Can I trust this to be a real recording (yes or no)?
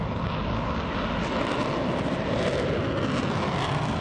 yes